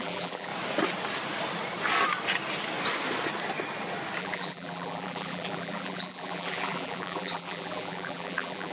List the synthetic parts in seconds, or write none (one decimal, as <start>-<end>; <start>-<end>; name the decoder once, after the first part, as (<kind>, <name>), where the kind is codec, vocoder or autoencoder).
0.0-0.5 (vocoder, BigVGAN v2); 4.2-8.7